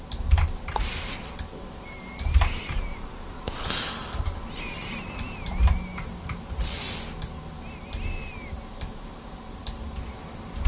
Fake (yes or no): no